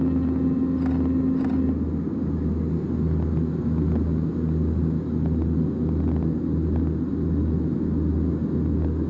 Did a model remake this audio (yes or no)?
no